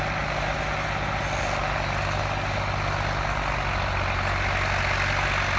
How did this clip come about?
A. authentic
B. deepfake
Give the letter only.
A